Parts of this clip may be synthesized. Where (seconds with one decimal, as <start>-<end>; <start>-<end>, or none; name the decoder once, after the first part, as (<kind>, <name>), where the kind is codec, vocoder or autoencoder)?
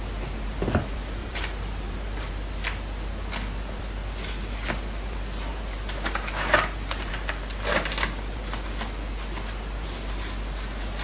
1.2-2.3 (vocoder, BigVGAN v2); 5.5-7.1